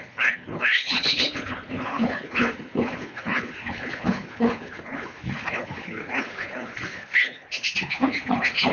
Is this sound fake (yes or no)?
yes